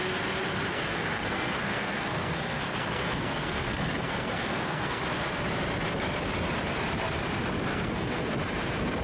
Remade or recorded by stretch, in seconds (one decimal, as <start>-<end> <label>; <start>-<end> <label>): 0.0-0.7 recorded; 0.7-5.0 remade; 5.0-7.7 recorded; 7.7-8.3 remade; 8.3-9.0 recorded